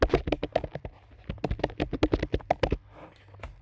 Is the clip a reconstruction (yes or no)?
no